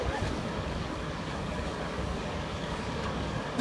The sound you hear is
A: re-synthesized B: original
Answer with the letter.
A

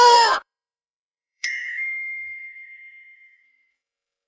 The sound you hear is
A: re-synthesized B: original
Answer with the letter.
A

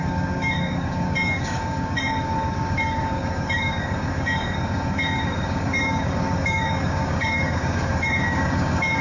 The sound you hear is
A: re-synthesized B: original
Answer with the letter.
A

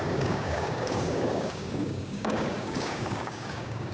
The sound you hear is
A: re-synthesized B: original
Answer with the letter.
A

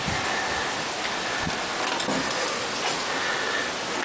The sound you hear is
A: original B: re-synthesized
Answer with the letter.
A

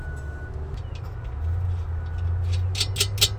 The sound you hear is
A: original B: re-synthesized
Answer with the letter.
A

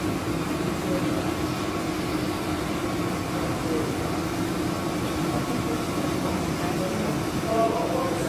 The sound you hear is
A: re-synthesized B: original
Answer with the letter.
B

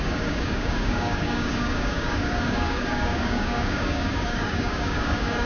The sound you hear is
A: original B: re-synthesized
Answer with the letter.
B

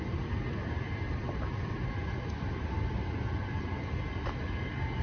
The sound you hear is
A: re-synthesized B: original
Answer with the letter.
B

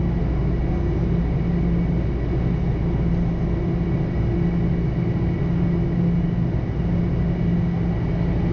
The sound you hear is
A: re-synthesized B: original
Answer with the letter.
B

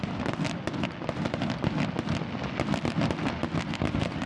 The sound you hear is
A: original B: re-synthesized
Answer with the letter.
A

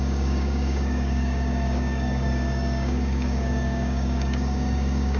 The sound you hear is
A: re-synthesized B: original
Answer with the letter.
A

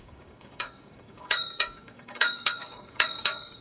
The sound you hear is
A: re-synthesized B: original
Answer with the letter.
A